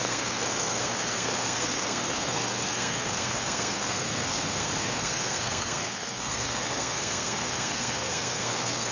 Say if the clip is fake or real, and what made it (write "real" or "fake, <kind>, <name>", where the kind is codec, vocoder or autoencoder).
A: fake, codec, SNAC